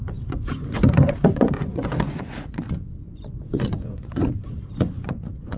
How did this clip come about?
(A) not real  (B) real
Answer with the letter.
A